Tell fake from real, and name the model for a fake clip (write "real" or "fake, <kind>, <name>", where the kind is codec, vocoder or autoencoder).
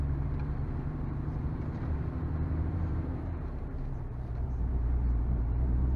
fake, vocoder, BigVGAN v2